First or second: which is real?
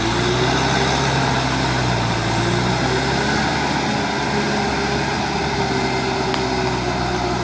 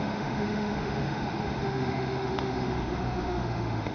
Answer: first